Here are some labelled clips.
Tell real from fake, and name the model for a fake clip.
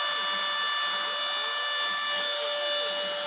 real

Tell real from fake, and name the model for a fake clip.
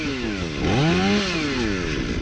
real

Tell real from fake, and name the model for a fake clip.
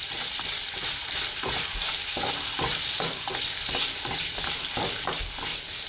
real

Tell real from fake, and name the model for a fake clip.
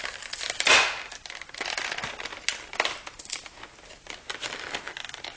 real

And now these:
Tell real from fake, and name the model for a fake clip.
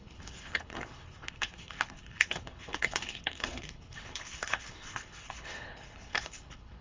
fake, codec, HILCodec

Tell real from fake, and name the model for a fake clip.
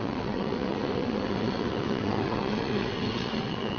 fake, vocoder, WaveNeXt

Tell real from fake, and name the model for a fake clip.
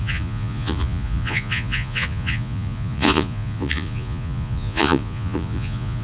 fake, vocoder, Vocos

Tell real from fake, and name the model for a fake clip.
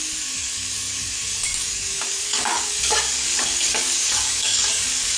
fake, codec, DAC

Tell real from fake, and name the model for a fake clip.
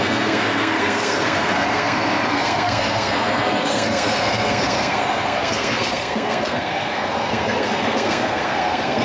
fake, codec, SNAC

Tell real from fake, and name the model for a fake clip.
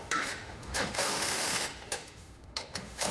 fake, autoencoder, DAC-VAE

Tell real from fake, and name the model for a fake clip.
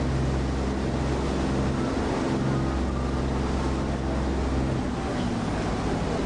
real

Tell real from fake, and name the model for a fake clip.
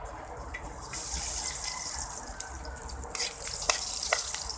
fake, vocoder, BigVGAN v2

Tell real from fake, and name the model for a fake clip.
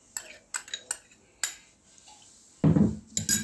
real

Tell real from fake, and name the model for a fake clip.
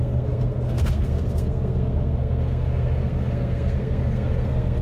fake, codec, SNAC